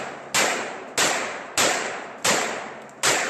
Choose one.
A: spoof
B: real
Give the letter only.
B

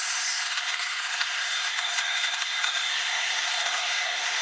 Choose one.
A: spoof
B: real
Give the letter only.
A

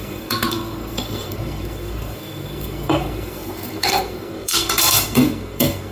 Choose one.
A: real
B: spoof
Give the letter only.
B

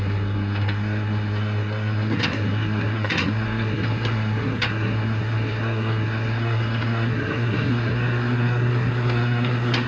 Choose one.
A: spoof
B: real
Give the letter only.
A